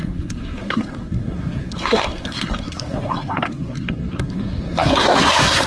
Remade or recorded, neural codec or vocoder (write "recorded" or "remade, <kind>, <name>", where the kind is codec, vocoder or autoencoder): remade, codec, SNAC